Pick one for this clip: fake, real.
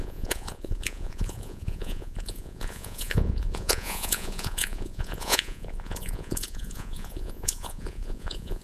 fake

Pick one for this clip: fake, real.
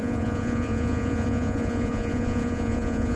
fake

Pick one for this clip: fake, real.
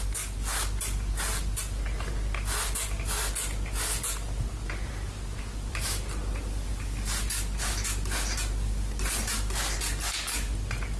real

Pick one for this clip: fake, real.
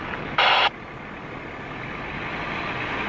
real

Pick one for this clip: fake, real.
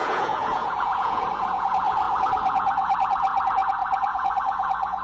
fake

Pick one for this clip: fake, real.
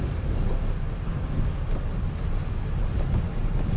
real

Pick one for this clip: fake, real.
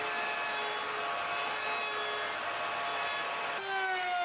real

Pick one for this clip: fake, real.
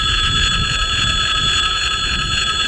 fake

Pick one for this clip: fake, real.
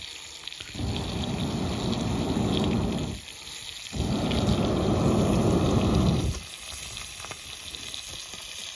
real